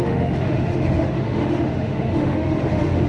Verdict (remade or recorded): remade